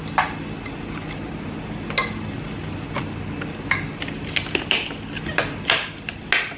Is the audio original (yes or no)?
yes